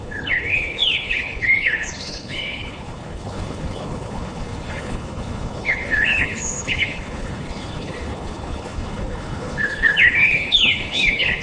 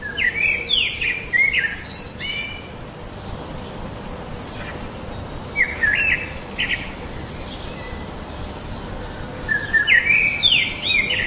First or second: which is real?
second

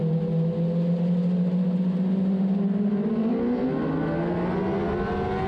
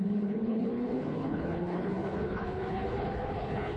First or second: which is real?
first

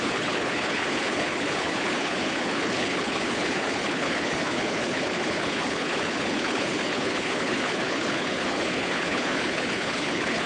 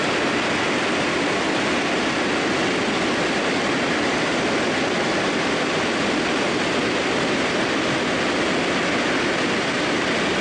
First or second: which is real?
second